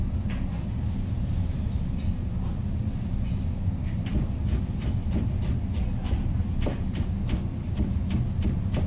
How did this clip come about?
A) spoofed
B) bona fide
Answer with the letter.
B